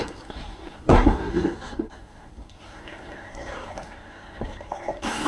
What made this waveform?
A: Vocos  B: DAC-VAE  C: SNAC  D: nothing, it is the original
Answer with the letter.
C